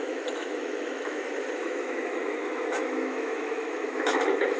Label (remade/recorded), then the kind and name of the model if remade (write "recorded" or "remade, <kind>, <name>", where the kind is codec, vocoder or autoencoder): remade, autoencoder, DAC-VAE